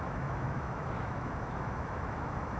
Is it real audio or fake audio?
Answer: fake